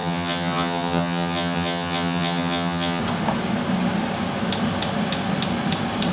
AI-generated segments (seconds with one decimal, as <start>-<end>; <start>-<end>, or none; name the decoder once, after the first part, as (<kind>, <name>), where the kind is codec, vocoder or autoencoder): 0.0-3.0 (vocoder, HiFi-GAN)